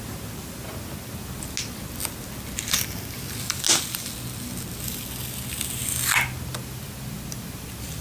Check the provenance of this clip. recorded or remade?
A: recorded